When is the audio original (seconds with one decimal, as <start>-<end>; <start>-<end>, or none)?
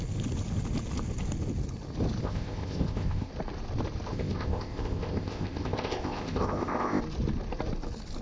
0.0-2.2; 3.3-4.1; 7.0-8.2